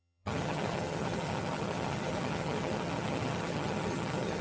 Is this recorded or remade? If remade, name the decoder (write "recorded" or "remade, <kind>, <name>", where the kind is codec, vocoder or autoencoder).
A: remade, vocoder, HiFi-GAN